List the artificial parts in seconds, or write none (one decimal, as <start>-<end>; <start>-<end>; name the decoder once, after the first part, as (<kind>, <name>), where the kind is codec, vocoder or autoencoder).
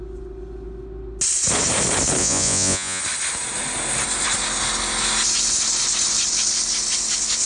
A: 2.2-3.0 (vocoder, Vocos)